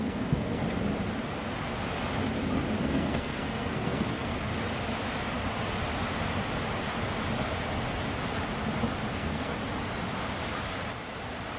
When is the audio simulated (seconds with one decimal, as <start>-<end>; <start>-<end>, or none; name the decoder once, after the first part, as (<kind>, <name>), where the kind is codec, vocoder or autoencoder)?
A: 0.0-0.6 (codec, SNAC); 2.8-4.5; 9.1-9.6